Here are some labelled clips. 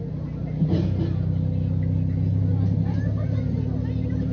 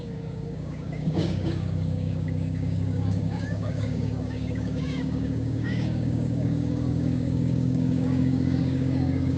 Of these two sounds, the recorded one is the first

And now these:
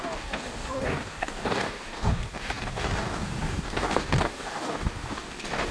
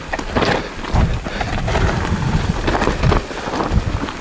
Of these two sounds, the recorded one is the second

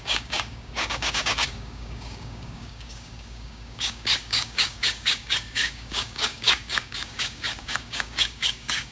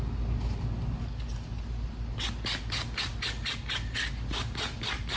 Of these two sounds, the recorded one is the second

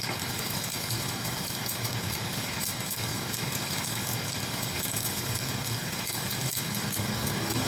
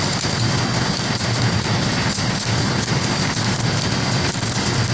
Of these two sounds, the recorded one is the second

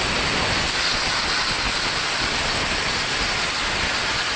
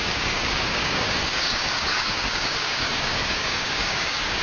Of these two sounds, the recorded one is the first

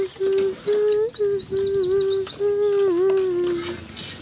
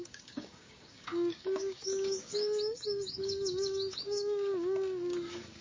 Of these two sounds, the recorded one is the first